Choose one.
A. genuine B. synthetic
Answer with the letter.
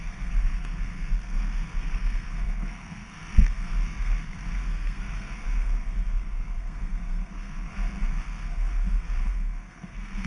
B